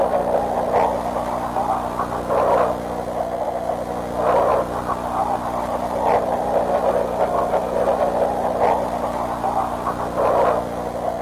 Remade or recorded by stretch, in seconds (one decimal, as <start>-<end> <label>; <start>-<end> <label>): 0.0-4.5 recorded; 4.5-6.6 remade; 6.6-11.2 recorded